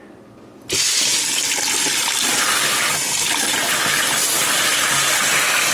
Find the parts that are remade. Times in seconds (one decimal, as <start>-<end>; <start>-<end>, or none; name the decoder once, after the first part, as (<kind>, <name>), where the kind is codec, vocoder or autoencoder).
none